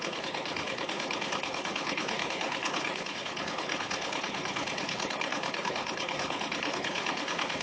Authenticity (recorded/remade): remade